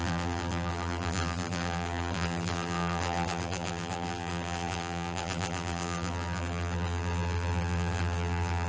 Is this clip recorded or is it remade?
remade